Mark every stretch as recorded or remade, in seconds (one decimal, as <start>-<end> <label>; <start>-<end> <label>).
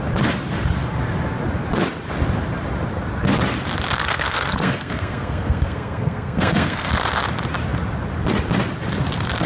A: 0.0-4.0 recorded; 4.0-6.9 remade; 6.9-9.5 recorded